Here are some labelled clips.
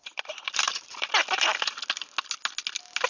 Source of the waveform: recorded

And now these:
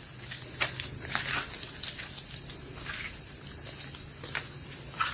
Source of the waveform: recorded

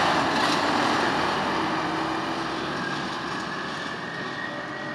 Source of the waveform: recorded